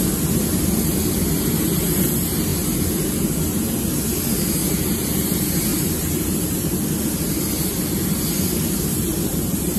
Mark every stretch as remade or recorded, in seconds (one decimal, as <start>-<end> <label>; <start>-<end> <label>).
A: 0.0-4.6 recorded; 4.6-5.2 remade; 5.2-5.7 recorded; 5.7-6.8 remade; 6.8-9.8 recorded